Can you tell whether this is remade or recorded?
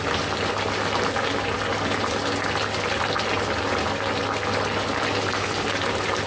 recorded